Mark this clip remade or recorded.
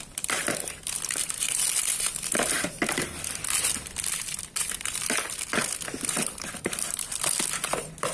remade